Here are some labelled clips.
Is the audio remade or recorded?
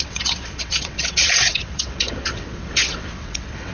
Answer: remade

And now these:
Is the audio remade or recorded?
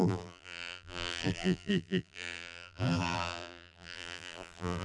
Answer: remade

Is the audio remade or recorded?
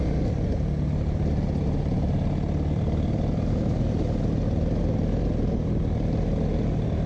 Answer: recorded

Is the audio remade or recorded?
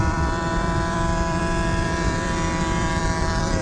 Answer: remade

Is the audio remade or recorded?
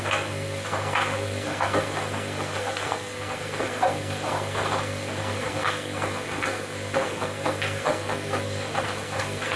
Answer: remade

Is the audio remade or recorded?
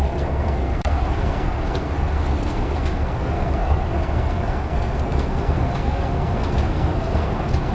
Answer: remade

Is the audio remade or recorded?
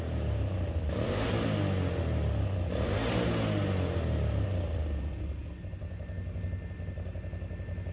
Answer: recorded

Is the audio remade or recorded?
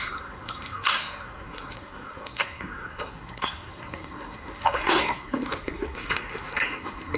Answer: remade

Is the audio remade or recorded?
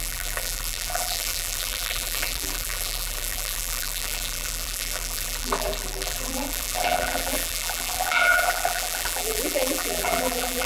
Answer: remade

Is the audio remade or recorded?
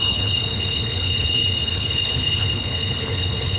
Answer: remade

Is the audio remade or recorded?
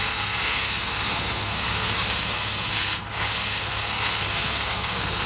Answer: remade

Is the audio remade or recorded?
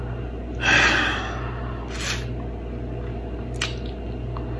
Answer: recorded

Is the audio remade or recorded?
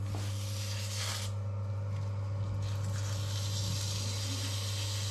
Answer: recorded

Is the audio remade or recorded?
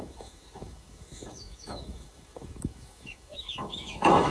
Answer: remade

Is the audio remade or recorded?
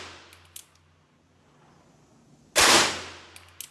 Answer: recorded